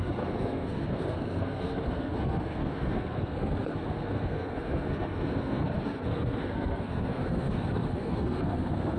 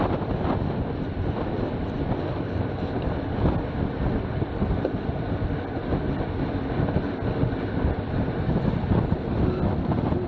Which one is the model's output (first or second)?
first